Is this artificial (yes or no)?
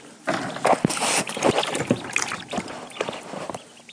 no